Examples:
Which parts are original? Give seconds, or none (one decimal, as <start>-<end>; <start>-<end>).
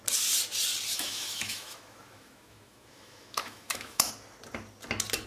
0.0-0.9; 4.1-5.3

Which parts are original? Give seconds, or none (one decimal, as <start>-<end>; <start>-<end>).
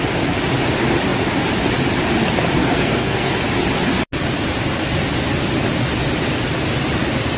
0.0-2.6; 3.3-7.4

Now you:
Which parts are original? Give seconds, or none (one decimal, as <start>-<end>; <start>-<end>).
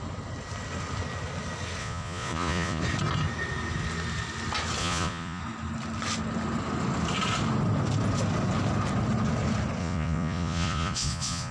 0.0-1.8; 2.8-4.8; 5.4-9.8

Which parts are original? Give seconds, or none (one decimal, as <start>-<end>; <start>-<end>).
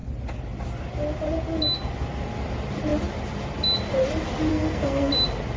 0.0-4.5; 5.1-5.6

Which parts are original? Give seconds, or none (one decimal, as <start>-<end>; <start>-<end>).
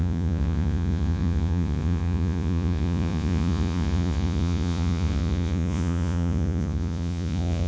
none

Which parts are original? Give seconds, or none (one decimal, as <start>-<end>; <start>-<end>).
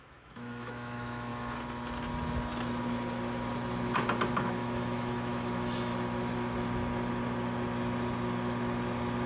1.3-4.3; 5.9-9.3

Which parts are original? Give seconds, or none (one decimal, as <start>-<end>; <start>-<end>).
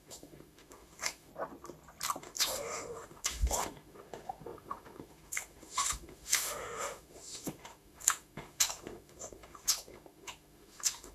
1.3-2.2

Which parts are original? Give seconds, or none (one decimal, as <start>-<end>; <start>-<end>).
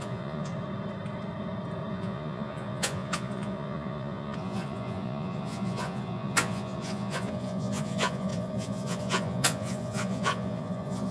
0.5-1.9